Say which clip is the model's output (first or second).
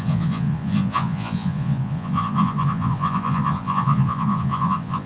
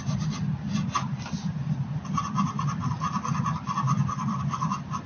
first